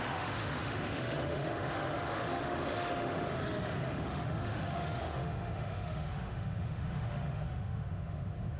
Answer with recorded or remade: remade